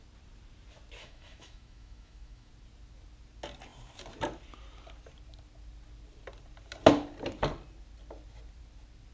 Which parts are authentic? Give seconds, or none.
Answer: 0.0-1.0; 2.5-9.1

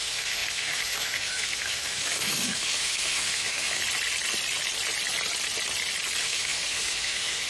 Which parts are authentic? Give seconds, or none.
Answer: 3.8-6.2

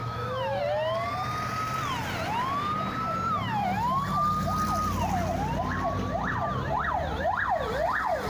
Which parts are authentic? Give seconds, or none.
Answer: 0.6-8.3

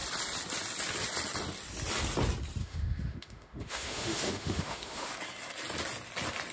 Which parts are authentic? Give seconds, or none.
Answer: 0.0-2.6; 5.1-6.5